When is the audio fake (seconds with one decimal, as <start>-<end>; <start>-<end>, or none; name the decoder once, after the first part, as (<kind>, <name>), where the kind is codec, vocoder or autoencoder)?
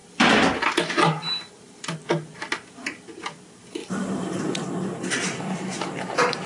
0.0-1.5 (vocoder, BigVGAN v2); 3.8-4.4